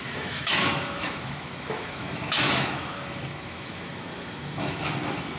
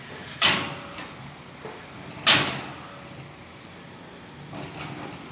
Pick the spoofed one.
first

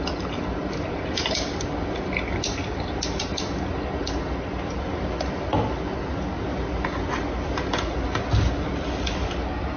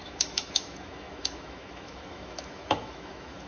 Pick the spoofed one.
second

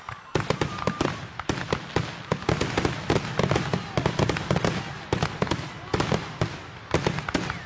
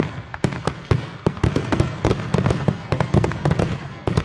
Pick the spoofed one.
second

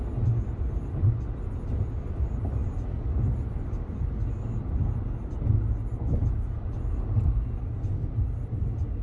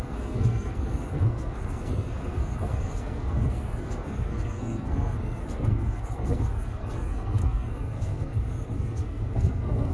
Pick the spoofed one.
second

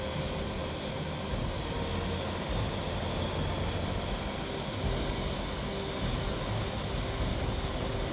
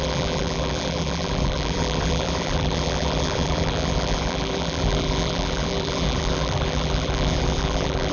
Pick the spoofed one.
second